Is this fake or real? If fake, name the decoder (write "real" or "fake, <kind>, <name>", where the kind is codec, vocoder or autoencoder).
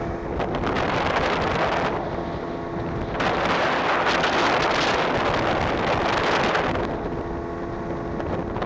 real